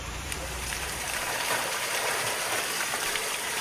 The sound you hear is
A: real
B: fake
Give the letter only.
B